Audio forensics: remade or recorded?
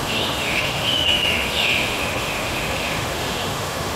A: remade